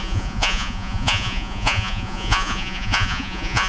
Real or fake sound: fake